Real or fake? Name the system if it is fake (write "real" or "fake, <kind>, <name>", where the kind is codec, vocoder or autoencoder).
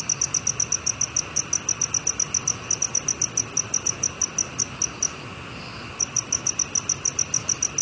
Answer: real